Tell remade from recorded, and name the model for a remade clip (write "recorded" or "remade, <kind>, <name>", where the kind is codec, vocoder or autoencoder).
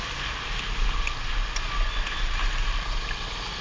recorded